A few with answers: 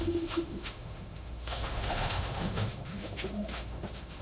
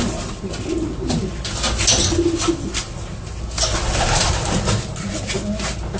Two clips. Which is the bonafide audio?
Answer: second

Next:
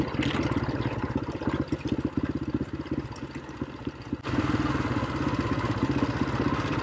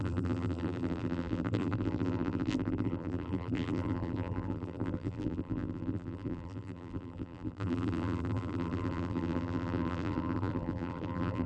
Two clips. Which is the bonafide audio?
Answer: first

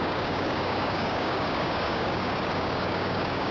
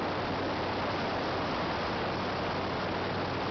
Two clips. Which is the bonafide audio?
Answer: second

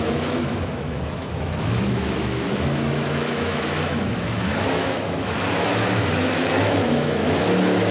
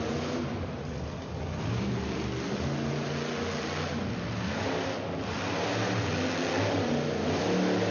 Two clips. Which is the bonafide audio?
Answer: second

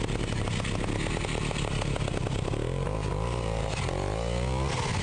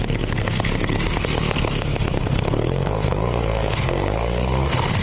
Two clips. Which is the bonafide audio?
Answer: first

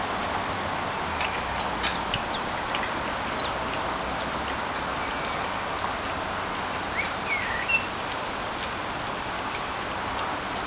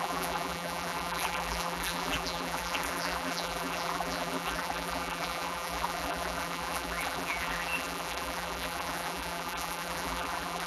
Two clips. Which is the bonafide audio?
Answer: first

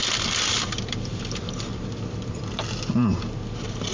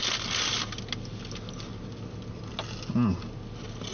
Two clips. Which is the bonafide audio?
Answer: second